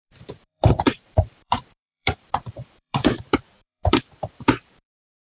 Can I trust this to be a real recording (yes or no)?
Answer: no